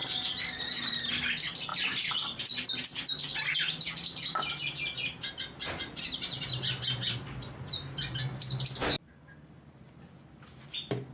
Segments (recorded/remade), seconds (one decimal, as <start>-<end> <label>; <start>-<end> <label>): 0.0-11.1 recorded